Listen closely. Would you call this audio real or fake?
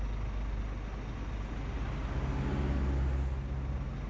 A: real